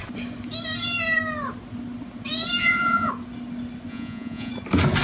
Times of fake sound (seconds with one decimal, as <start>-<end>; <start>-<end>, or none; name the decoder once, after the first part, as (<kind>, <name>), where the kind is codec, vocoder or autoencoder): 2.6-3.1 (vocoder, Vocos); 3.9-4.5